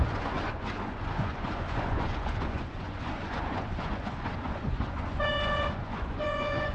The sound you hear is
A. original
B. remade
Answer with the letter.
B